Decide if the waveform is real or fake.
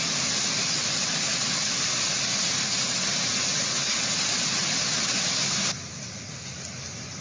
real